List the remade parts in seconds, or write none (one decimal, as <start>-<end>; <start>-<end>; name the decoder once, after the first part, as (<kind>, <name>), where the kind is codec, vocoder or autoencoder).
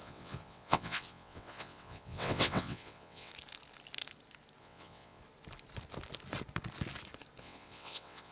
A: 0.0-3.3 (vocoder, WaveNeXt); 4.6-5.2; 7.4-8.3